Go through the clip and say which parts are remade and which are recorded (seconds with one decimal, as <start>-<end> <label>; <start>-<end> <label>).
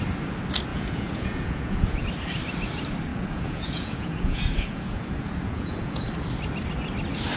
0.0-0.7 recorded; 0.7-2.0 remade; 2.0-3.1 recorded; 3.1-6.1 remade; 6.1-7.4 recorded